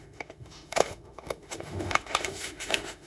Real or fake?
fake